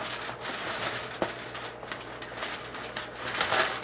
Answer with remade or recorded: recorded